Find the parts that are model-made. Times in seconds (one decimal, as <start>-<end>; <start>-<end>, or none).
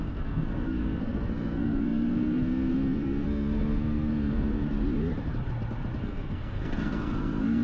0.0-4.6; 6.0-7.6